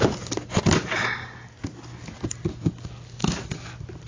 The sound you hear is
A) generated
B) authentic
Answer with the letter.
B